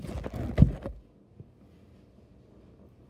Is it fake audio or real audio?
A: real